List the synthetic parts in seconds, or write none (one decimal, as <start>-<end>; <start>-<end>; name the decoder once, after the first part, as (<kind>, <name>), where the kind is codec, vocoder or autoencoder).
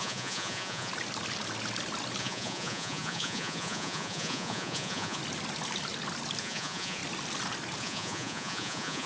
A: 0.0-0.9 (vocoder, Vocos); 2.2-5.2; 6.4-7.0; 7.8-9.1